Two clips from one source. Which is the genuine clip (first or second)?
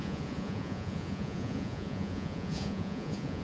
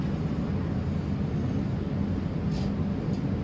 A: second